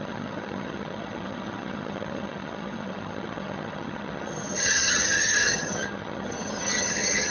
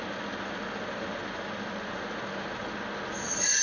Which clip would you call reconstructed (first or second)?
first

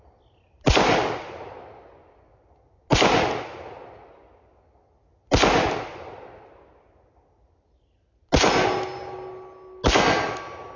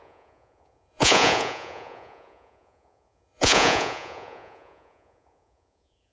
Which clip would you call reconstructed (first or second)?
second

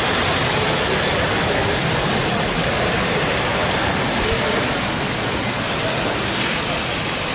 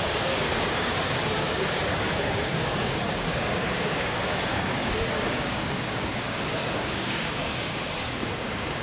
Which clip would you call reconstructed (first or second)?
second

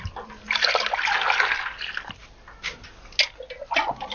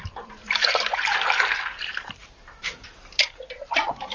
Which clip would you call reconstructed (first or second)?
second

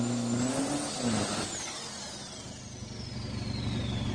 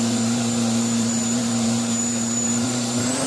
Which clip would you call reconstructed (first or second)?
second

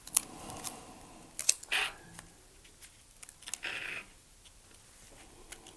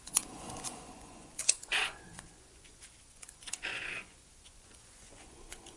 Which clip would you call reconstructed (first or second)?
second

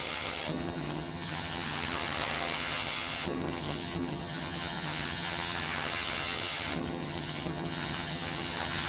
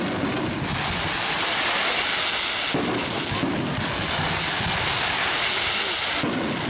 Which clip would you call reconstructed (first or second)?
first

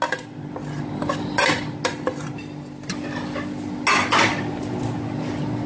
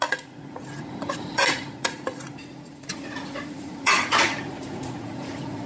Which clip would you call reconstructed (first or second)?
second